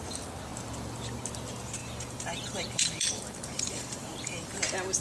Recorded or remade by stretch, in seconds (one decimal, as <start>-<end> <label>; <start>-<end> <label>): 0.0-1.8 recorded; 1.8-4.6 remade; 4.6-5.0 recorded